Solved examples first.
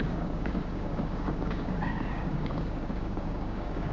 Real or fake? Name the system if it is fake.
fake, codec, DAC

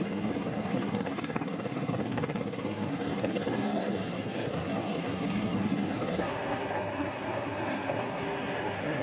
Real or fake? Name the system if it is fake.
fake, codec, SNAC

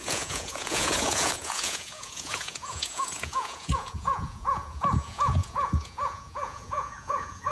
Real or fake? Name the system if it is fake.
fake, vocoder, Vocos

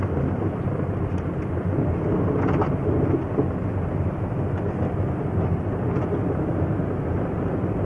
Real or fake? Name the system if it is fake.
real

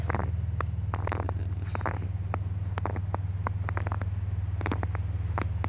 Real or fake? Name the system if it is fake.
real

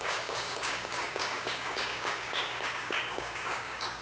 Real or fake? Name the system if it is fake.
fake, codec, DAC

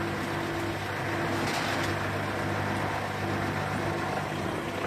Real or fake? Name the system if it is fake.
real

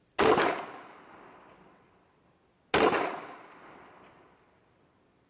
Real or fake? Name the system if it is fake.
real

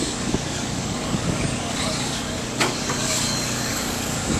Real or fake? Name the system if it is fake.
fake, codec, DAC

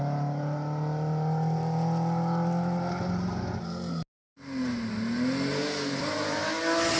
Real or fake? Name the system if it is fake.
real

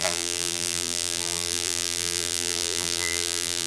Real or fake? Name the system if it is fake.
fake, vocoder, BigVGAN v2